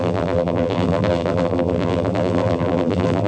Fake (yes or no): yes